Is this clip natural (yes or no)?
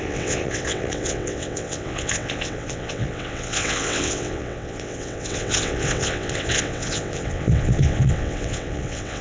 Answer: no